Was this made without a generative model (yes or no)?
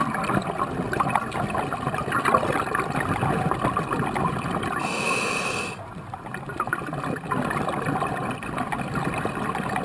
yes